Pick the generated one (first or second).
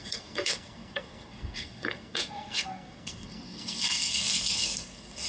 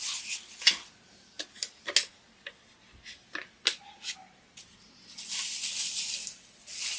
first